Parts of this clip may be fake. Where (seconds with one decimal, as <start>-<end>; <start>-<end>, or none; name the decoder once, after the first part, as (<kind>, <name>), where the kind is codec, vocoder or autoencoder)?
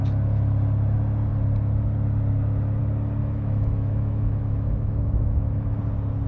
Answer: 3.2-5.8 (autoencoder, DAC-VAE)